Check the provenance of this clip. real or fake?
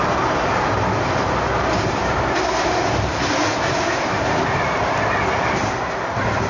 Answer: real